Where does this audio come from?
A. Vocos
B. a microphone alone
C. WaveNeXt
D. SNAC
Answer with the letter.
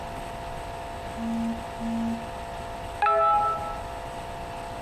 B